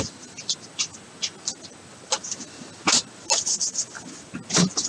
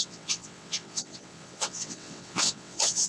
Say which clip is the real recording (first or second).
first